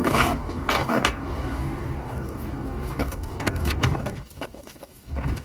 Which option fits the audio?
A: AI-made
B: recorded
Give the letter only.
A